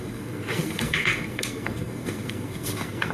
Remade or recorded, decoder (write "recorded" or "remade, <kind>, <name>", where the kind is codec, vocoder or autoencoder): remade, codec, SNAC